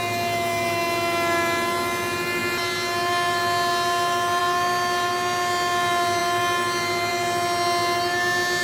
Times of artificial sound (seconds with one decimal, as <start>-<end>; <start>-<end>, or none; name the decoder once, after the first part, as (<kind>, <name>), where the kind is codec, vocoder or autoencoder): none